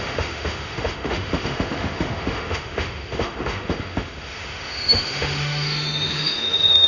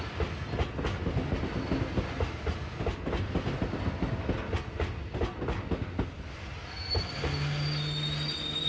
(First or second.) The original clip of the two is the second